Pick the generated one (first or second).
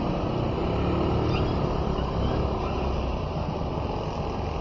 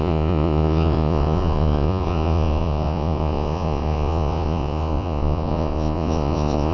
second